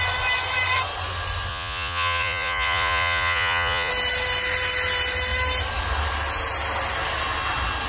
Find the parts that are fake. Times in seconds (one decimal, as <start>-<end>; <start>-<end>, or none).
1.5-3.9